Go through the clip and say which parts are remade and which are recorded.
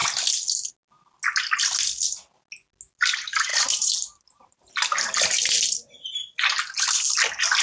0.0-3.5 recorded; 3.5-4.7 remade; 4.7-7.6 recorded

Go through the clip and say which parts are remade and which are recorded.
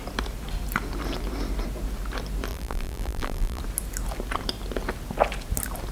0.0-2.5 recorded; 2.5-3.6 remade; 3.6-5.9 recorded